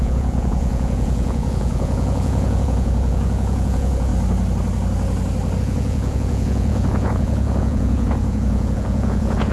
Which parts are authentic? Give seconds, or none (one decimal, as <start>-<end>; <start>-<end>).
4.1-5.6